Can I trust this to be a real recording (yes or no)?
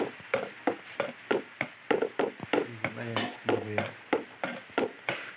yes